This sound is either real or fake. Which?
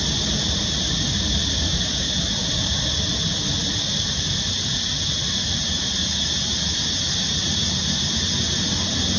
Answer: real